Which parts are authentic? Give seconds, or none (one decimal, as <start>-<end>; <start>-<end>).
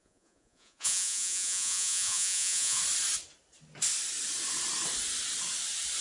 2.8-6.0